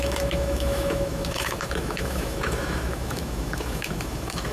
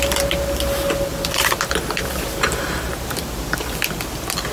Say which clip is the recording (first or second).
second